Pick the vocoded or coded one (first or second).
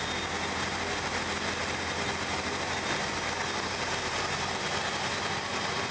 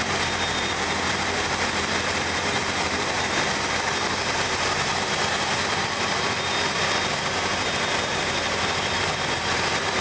second